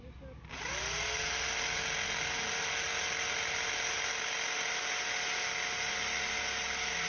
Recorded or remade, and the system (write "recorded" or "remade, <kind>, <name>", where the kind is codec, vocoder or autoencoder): recorded